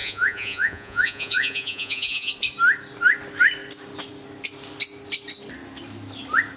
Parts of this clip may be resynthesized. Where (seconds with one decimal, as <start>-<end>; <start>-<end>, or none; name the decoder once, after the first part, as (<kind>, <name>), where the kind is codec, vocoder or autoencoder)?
0.0-2.3 (vocoder, Vocos)